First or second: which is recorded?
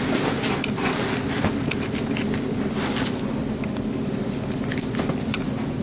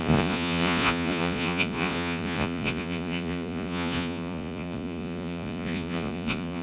first